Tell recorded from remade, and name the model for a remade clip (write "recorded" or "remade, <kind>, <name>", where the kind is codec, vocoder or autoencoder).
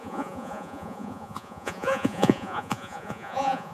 remade, vocoder, Vocos